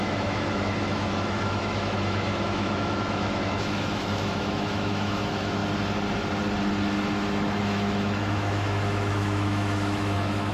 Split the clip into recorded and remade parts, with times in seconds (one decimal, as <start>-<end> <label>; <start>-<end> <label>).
0.0-5.6 remade; 5.6-7.6 recorded; 7.6-10.5 remade